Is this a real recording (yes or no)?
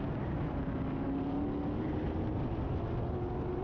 yes